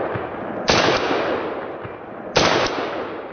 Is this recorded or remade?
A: recorded